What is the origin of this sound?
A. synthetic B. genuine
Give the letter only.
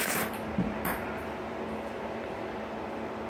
A